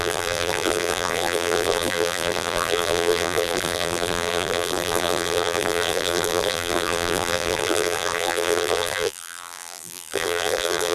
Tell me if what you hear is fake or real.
fake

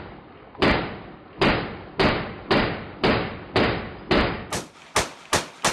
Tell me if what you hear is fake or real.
real